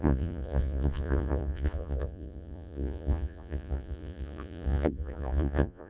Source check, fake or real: fake